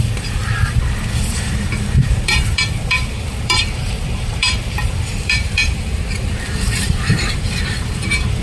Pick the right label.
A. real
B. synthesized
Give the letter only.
B